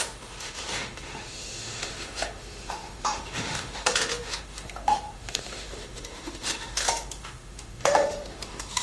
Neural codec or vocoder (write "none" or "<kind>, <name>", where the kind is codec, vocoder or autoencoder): autoencoder, DAC-VAE